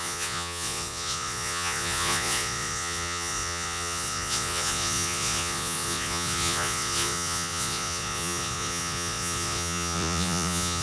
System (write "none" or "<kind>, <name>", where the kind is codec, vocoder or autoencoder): vocoder, Vocos